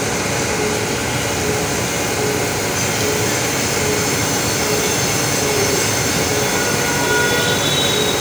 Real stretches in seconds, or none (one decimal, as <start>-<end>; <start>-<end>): 0.0-8.2